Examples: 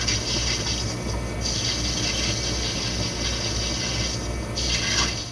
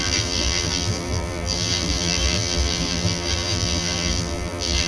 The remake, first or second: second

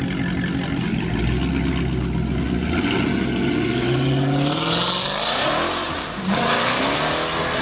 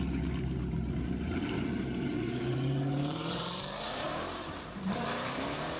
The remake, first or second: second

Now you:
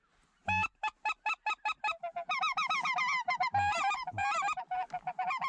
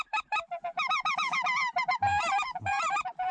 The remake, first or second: second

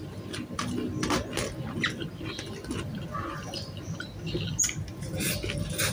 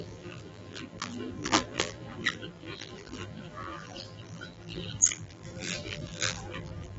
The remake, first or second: second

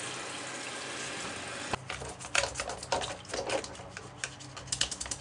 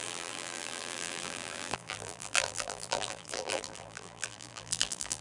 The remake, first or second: second